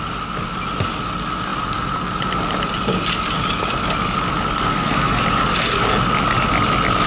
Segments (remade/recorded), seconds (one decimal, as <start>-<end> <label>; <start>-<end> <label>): 0.0-4.7 recorded; 4.7-5.2 remade; 5.2-7.1 recorded